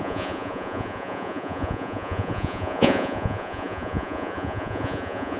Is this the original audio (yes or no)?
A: no